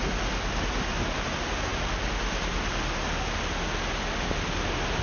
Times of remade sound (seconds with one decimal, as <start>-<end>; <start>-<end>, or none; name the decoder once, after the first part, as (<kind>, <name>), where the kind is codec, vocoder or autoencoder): none